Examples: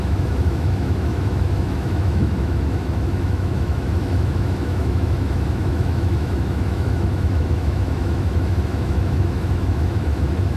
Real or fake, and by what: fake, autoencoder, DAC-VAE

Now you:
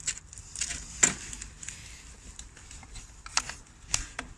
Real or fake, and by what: real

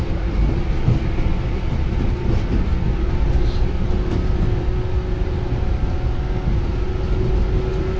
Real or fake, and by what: real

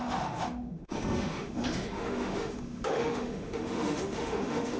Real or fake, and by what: fake, autoencoder, DAC-VAE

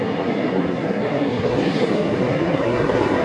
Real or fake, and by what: fake, codec, SNAC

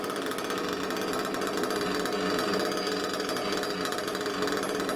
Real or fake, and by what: real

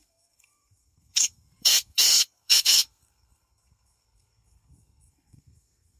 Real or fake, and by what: fake, codec, SNAC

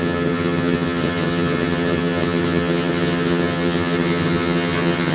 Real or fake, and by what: fake, vocoder, HiFi-GAN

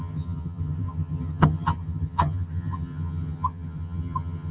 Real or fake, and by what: fake, vocoder, HiFi-GAN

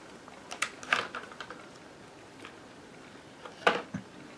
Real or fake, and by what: real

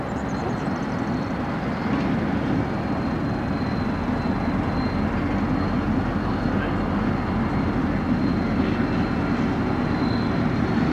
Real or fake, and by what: real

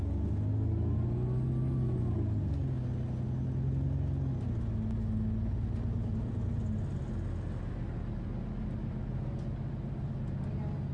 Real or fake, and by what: real